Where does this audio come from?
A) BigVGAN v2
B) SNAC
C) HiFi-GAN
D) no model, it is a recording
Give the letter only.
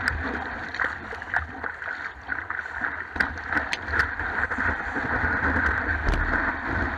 D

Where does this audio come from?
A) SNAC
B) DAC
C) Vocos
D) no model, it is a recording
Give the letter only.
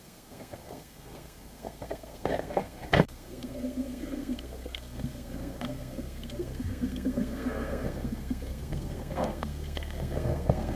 A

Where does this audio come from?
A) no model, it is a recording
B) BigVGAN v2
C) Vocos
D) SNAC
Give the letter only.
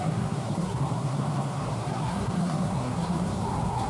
D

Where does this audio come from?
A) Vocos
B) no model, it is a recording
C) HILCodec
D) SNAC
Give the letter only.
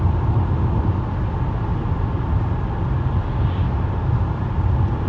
B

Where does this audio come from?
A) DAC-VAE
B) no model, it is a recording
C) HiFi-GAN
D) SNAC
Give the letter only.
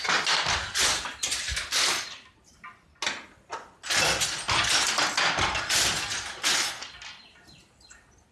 B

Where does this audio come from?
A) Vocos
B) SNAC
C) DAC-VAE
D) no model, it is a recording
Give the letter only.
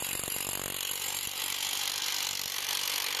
D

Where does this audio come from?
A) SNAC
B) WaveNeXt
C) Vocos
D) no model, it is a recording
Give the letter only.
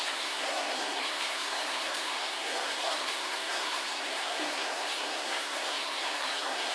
A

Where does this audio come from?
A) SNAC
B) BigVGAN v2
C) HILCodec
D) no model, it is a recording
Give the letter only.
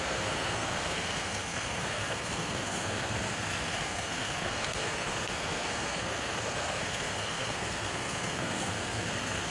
A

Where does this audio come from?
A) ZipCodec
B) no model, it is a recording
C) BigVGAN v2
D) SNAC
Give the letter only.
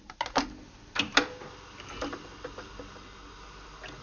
B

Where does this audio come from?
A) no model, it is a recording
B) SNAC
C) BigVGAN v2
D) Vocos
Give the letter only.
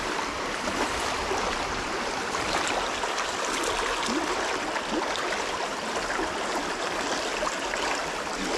A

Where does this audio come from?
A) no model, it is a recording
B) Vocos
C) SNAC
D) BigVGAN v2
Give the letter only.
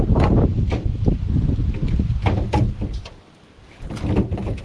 A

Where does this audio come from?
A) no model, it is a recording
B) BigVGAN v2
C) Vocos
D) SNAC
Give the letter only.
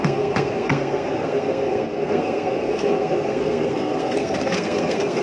D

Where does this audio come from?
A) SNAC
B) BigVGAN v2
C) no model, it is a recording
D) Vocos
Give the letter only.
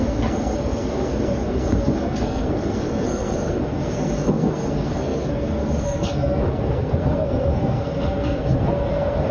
A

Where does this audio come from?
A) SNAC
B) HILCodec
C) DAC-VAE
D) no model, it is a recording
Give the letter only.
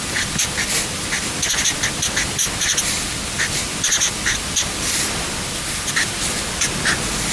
D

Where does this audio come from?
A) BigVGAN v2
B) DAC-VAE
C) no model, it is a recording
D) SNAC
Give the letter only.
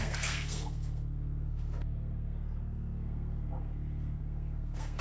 D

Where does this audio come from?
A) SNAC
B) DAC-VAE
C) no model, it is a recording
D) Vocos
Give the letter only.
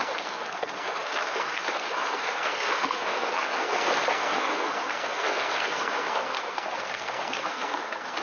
A